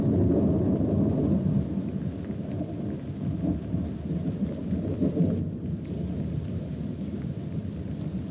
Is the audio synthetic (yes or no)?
no